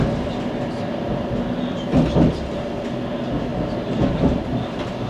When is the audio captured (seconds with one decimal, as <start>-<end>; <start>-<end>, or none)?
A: 0.0-5.1